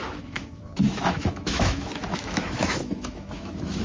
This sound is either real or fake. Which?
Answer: fake